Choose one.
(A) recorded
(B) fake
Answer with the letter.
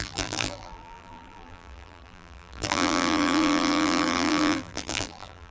B